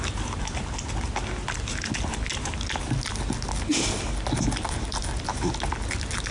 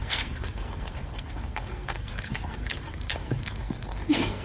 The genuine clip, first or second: first